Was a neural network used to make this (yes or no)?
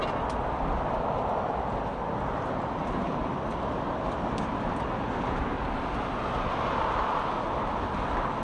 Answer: no